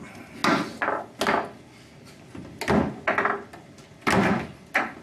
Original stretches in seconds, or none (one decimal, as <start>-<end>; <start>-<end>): 0.0-5.0

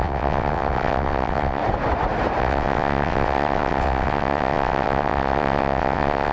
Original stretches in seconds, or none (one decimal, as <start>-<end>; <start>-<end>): 1.6-2.4